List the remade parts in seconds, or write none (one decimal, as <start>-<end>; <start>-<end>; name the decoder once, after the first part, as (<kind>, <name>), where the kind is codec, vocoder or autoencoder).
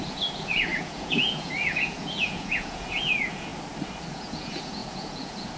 0.0-3.5 (vocoder, Vocos); 4.1-5.6